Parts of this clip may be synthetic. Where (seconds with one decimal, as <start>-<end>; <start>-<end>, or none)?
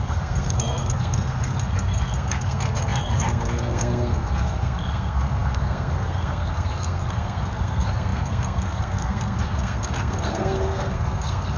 0.0-11.6